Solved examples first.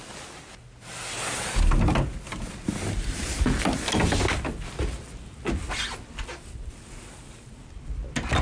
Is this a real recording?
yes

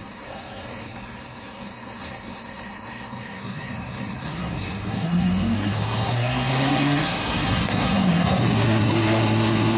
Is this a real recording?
no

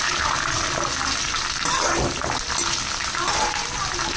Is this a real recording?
yes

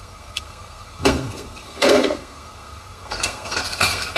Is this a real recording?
no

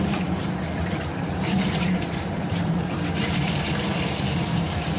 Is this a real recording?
no